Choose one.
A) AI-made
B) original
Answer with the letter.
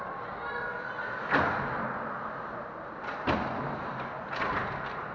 B